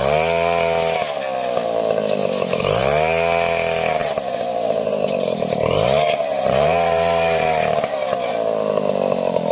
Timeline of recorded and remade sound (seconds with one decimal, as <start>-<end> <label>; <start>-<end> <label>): 0.0-2.2 recorded; 2.2-2.8 remade; 2.8-4.0 recorded; 4.0-8.3 remade; 8.3-9.5 recorded